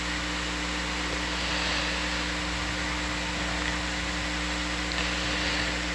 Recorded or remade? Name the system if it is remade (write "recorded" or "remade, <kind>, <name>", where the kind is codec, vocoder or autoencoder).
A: recorded